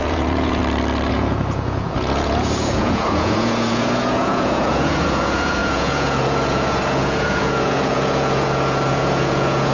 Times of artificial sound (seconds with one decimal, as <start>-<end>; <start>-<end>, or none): 0.0-0.6; 1.1-9.7